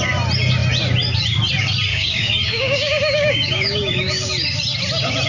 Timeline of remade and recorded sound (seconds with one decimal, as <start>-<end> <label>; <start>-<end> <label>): 0.0-1.9 recorded; 1.9-4.3 remade; 4.3-5.3 recorded